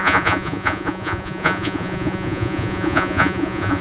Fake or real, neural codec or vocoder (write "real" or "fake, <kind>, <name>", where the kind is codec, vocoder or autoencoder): fake, vocoder, Vocos